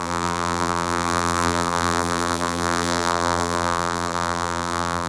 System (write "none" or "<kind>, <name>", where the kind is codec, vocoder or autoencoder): vocoder, BigVGAN v2